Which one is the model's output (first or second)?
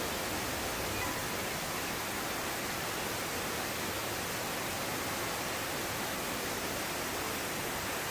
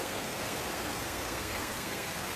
second